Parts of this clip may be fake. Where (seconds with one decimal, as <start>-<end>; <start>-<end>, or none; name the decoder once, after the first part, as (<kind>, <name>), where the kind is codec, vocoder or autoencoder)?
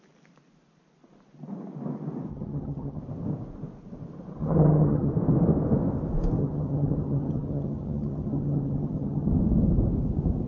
2.3-3.0 (vocoder, HiFi-GAN); 4.4-5.1; 6.4-9.3